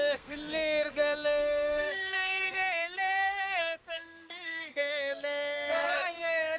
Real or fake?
fake